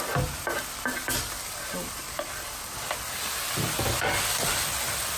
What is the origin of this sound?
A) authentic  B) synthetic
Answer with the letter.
A